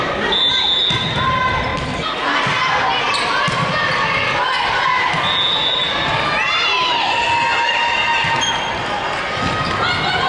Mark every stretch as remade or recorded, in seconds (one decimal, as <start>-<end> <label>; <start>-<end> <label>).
0.0-10.3 recorded